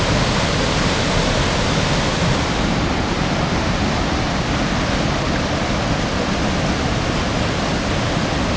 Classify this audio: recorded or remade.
recorded